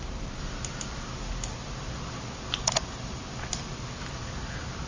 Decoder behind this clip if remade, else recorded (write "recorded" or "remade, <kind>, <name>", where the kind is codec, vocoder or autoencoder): recorded